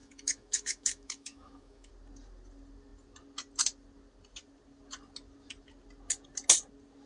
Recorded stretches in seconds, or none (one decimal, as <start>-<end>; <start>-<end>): 1.9-7.1

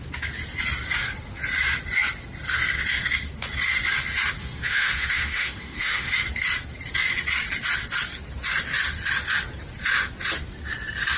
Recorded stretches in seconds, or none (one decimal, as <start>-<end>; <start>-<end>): 0.0-4.4; 6.1-11.2